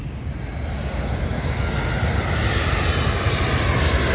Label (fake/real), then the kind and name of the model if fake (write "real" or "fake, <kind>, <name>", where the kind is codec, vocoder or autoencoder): real